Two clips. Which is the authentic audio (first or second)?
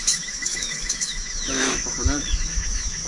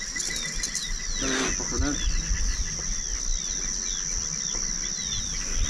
second